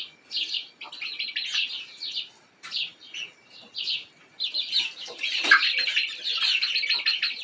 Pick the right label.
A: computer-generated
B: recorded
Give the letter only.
B